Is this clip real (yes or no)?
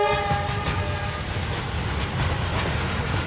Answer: yes